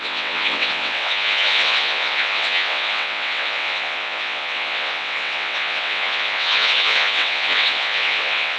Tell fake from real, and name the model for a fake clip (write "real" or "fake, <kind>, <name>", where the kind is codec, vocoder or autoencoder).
fake, vocoder, WaveNeXt